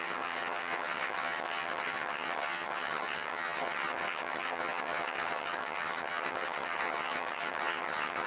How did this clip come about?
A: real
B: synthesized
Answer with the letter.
B